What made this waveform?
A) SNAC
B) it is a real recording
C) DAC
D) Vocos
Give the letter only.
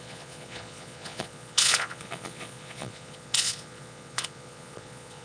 D